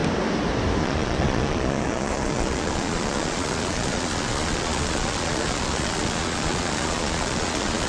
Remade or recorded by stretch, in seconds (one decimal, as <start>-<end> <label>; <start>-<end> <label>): 0.0-0.8 recorded; 0.8-7.9 remade